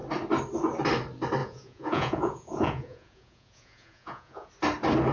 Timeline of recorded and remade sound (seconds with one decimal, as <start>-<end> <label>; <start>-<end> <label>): 0.0-1.4 recorded; 1.4-4.5 remade; 4.5-5.1 recorded

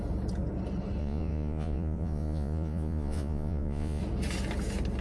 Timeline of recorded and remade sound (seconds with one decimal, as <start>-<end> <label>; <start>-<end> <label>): 0.0-1.0 recorded; 1.0-4.0 remade; 4.0-5.0 recorded